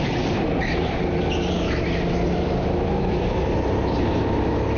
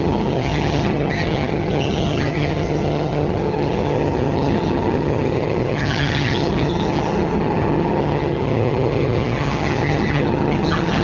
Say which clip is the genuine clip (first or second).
first